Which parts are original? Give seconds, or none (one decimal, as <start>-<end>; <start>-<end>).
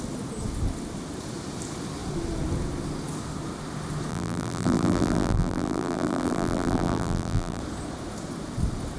0.0-4.1; 7.6-9.0